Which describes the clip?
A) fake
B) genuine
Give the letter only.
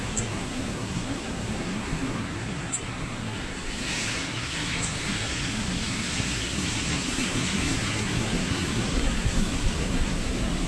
A